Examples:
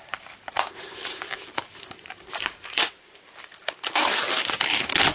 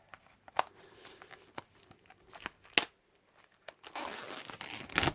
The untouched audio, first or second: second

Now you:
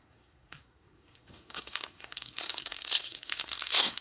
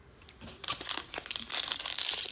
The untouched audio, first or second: second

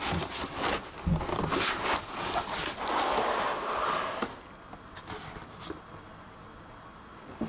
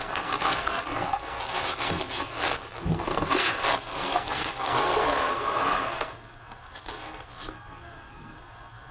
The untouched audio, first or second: first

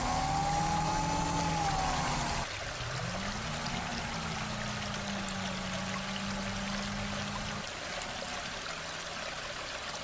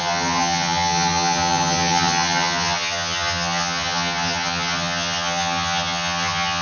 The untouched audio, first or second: first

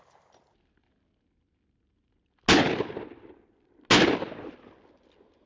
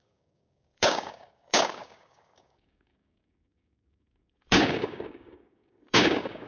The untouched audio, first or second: first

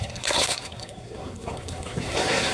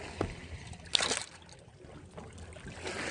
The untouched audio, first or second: second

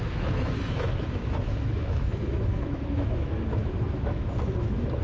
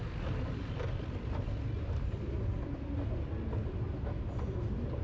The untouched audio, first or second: second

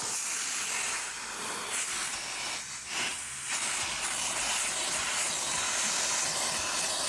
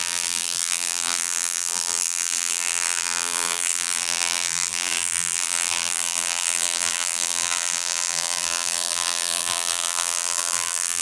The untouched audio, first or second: first